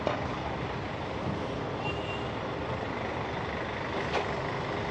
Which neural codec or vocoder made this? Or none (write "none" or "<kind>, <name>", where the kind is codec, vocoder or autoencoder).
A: none